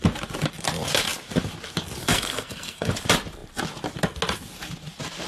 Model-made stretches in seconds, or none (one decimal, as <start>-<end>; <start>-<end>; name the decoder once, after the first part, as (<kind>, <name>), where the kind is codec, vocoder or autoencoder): 2.0-2.9 (codec, SNAC)